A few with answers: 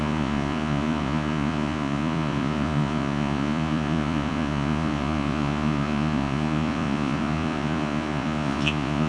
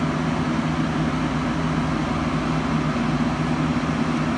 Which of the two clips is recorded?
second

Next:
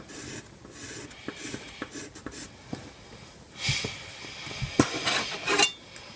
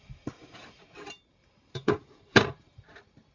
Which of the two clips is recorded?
first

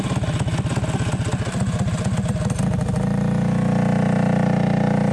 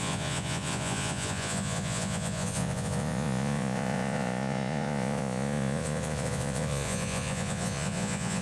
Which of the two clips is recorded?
first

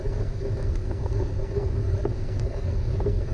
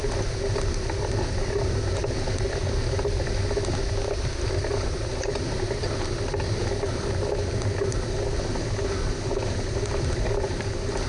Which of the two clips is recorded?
second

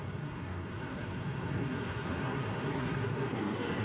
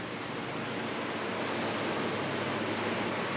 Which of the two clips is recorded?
second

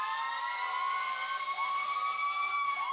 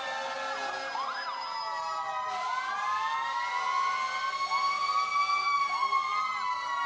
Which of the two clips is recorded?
second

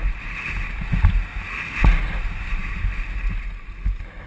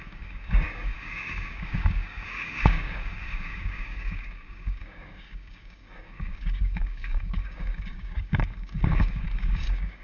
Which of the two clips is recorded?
first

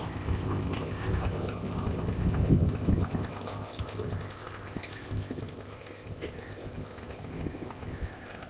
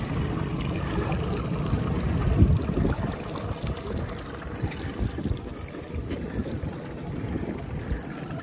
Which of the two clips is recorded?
second